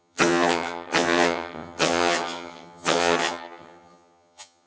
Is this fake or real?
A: fake